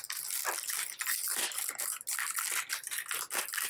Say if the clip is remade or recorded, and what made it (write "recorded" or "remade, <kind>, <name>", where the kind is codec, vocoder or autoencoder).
recorded